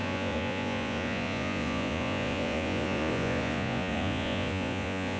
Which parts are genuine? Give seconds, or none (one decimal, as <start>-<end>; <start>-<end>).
none